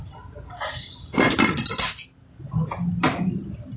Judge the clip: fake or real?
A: real